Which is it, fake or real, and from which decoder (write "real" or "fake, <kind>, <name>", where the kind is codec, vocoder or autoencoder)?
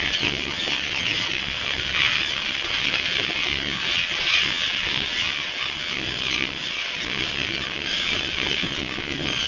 fake, vocoder, WaveNeXt